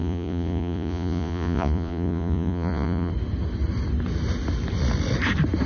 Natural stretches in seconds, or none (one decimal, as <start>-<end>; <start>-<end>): 3.1-5.7